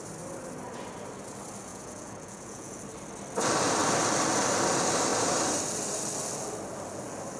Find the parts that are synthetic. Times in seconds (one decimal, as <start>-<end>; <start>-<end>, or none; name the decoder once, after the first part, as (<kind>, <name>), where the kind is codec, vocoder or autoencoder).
1.7-2.8 (vocoder, Vocos)